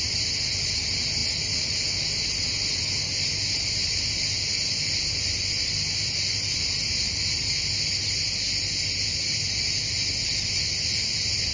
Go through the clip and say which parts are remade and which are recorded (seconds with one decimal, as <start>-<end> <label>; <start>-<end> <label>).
0.0-11.5 recorded